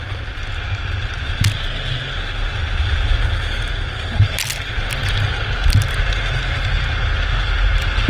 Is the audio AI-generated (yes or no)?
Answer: no